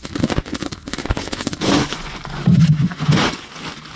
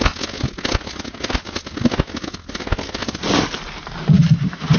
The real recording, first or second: second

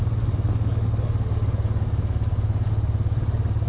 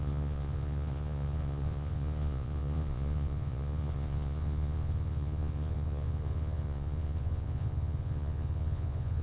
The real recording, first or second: first